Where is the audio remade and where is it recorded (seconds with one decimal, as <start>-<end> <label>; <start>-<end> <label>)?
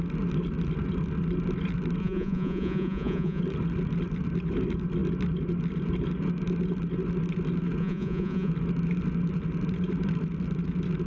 0.0-2.0 recorded; 2.0-3.4 remade; 3.4-7.8 recorded; 7.8-8.5 remade; 8.5-11.1 recorded